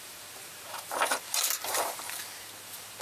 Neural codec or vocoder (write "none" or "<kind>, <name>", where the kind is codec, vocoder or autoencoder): vocoder, BigVGAN v2